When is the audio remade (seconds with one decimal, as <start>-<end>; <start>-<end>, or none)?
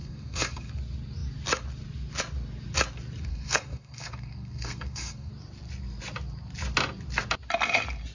0.0-0.7; 3.3-5.3